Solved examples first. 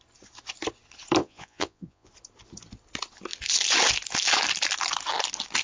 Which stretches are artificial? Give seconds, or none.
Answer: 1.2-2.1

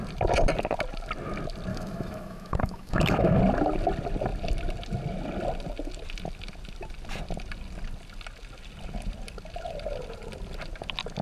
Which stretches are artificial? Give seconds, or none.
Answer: 1.7-3.4

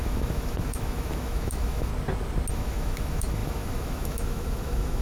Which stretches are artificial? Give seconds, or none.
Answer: 0.0-1.9; 2.5-5.0

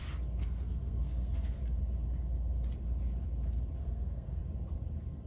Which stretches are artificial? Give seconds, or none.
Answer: 0.4-1.6; 3.8-4.4

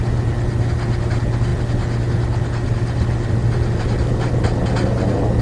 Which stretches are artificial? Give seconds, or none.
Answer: none